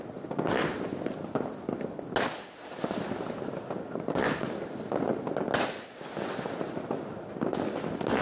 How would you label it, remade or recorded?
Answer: recorded